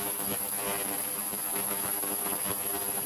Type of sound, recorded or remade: remade